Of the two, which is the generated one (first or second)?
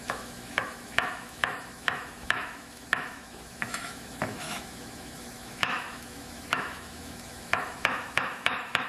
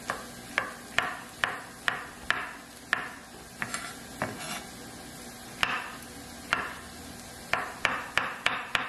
first